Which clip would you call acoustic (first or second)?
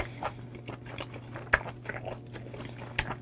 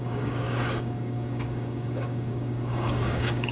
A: first